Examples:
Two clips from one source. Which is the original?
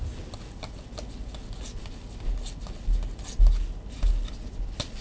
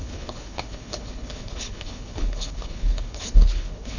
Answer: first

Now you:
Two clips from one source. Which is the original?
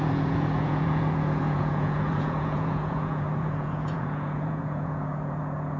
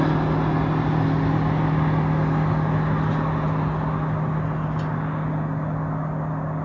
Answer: second